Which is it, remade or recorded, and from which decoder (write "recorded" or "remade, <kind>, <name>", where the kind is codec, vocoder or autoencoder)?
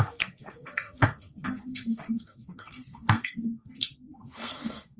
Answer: remade, codec, SNAC